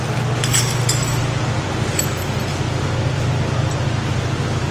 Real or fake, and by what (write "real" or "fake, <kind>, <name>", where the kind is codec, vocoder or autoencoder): real